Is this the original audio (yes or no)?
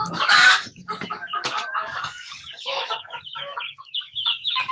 no